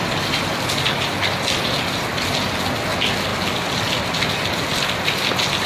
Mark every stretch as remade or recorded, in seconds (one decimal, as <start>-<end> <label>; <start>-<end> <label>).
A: 0.0-5.7 recorded